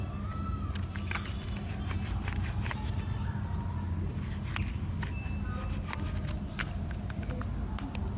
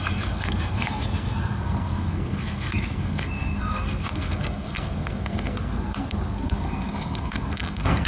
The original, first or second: first